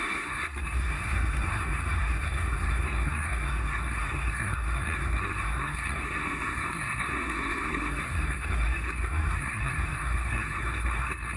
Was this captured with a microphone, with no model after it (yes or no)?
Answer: no